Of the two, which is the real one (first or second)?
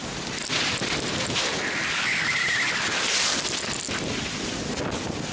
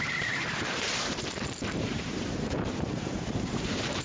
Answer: first